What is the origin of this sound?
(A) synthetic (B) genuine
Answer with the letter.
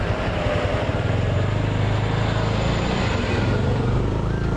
A